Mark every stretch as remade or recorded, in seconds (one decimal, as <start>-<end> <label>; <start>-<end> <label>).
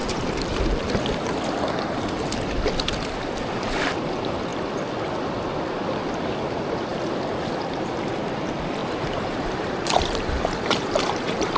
0.0-0.5 remade; 0.5-8.8 recorded; 8.8-11.6 remade